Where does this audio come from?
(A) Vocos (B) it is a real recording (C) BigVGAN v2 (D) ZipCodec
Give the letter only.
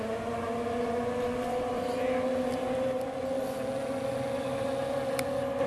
B